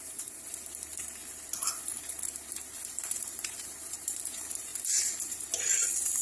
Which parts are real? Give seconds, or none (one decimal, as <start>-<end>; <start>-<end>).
1.2-3.2; 4.7-6.2